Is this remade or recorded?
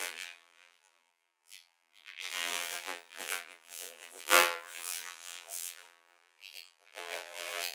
remade